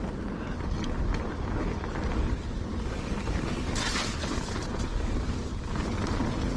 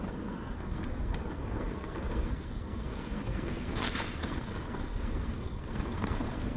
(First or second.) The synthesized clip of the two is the second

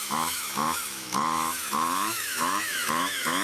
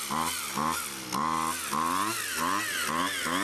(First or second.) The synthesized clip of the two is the first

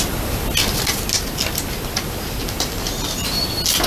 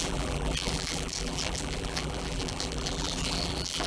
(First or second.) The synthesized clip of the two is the second